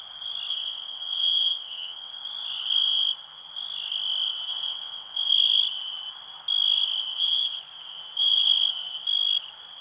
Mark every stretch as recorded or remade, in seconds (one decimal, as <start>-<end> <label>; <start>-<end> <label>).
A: 0.0-0.5 recorded; 0.5-2.2 remade; 2.2-4.5 recorded; 4.5-5.3 remade; 5.3-7.1 recorded; 7.1-7.6 remade; 7.6-9.8 recorded